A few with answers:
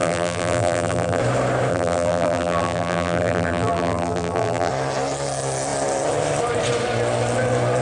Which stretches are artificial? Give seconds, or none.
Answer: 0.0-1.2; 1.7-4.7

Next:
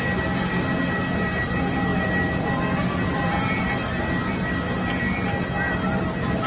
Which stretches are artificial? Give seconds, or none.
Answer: 1.9-3.5

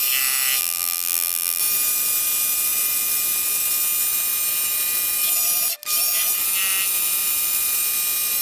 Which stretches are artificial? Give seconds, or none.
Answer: 0.6-1.6

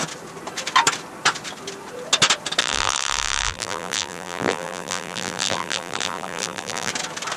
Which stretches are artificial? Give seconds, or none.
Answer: 2.6-6.9